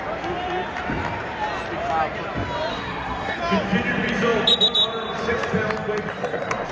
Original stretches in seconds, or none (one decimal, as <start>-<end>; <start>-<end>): 0.0-2.7; 3.4-6.1